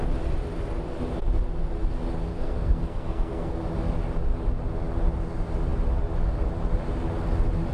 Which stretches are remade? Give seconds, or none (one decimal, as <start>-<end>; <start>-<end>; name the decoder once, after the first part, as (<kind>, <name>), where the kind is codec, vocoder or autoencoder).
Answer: 2.3-3.5 (codec, SNAC)